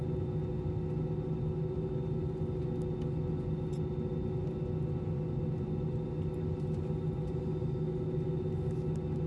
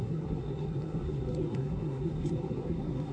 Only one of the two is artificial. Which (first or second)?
second